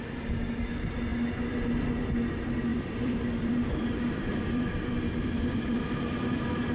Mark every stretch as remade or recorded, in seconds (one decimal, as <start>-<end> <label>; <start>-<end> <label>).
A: 0.0-2.7 recorded; 2.7-6.7 remade